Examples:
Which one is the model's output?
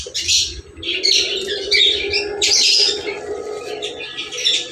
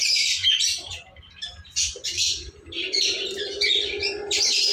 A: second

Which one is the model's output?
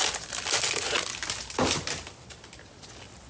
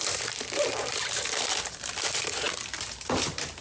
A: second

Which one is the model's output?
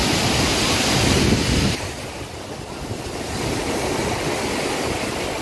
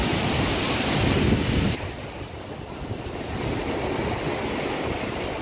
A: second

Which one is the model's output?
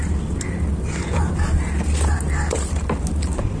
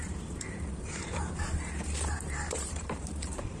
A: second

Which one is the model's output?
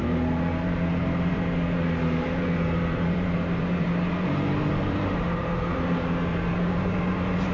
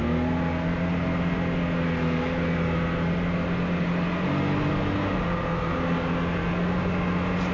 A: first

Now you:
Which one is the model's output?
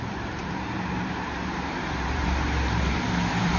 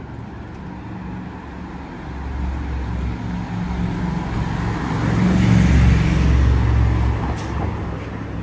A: first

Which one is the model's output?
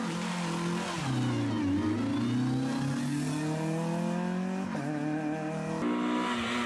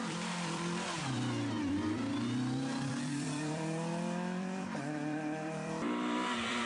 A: second